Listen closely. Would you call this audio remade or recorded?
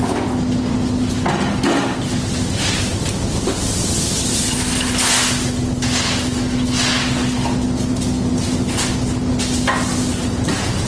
recorded